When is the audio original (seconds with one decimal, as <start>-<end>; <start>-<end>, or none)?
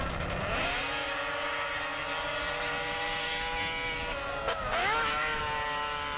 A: 0.0-4.8; 5.4-6.2